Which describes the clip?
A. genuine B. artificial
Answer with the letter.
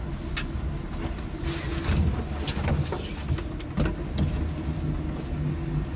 A